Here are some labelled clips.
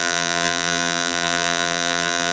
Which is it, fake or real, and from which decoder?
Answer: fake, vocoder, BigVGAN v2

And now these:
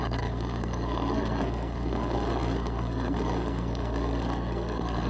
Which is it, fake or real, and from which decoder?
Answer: fake, codec, SNAC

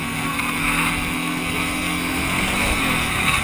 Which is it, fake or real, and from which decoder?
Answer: fake, codec, SNAC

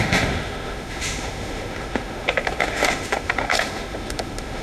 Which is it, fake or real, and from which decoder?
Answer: fake, autoencoder, DAC-VAE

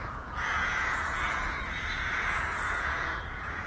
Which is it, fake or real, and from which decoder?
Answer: fake, vocoder, Vocos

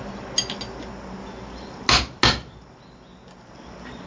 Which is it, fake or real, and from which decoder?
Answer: real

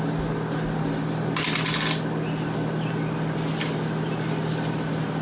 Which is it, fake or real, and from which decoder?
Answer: real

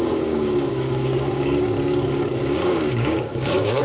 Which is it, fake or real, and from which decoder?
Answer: fake, codec, DAC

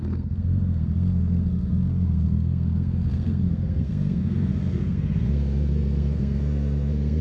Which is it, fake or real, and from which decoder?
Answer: fake, codec, SNAC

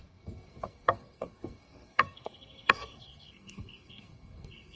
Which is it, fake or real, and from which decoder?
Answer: fake, codec, SNAC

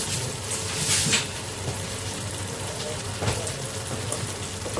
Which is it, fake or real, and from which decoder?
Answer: real